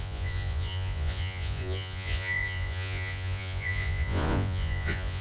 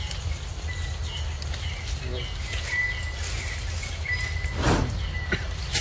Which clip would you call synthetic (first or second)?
first